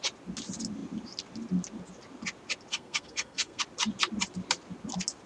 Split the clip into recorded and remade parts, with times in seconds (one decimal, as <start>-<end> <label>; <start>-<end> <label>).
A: 0.0-2.7 recorded; 2.7-3.6 remade; 3.6-5.3 recorded